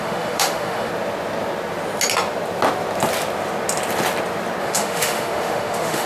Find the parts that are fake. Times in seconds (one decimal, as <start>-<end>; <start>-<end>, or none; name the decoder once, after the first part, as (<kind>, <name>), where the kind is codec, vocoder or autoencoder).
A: 0.0-0.9 (autoencoder, DAC-VAE); 4.6-6.1